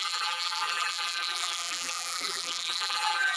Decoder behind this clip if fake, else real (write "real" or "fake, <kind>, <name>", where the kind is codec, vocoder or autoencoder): fake, vocoder, BigVGAN v2